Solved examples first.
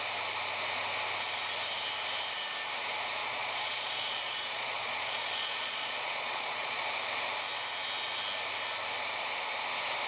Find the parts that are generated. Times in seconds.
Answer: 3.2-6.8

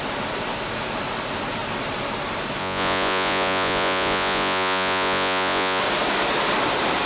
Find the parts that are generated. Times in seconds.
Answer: 2.6-5.8

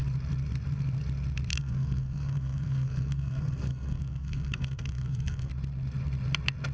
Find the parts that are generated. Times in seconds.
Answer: 1.5-5.5

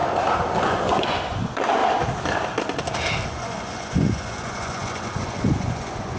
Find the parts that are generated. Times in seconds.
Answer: 0.6-1.8; 3.3-6.2

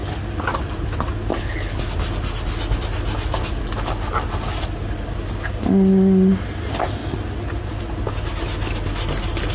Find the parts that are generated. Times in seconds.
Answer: 1.3-1.8

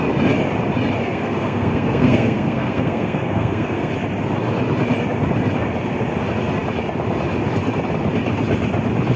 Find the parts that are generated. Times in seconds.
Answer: 1.0-3.9

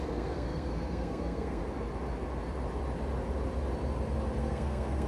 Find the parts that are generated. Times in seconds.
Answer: 0.0-1.6; 4.4-5.1

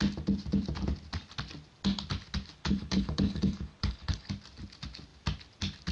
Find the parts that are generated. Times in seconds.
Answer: 2.6-4.3